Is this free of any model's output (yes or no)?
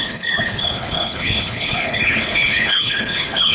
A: no